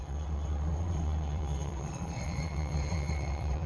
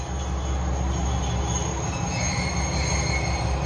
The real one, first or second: second